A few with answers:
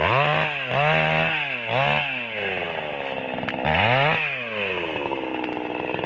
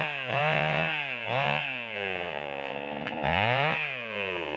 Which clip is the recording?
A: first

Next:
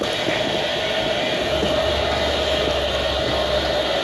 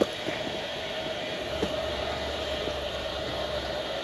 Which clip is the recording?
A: first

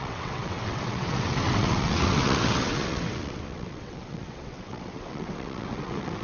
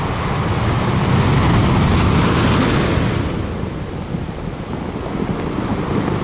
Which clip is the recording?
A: second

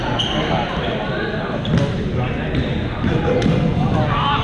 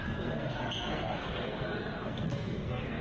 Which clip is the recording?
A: first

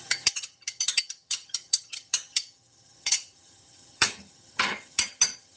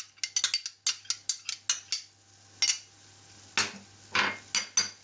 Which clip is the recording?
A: second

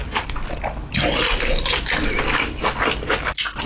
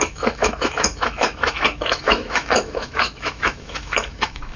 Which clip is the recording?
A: first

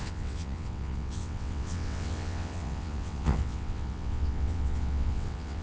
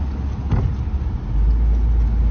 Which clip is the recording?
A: second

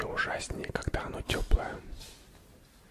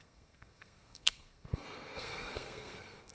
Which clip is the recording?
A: first